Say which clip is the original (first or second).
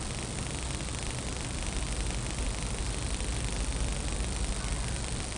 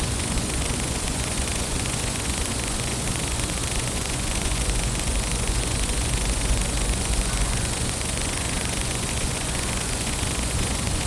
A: first